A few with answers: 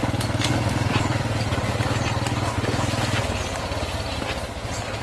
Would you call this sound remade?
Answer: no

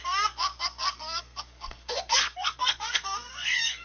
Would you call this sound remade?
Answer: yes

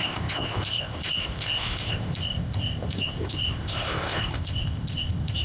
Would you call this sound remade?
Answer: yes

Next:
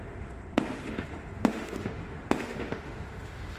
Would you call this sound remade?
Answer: yes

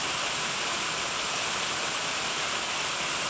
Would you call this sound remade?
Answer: no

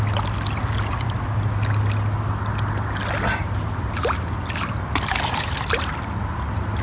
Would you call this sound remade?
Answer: no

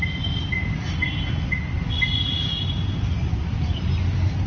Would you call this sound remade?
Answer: no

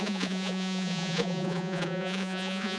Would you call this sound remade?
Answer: yes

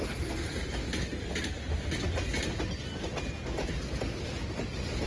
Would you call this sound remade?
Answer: no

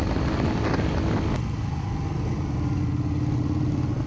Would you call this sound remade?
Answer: no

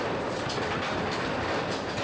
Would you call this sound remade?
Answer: no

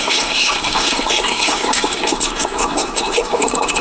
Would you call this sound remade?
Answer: yes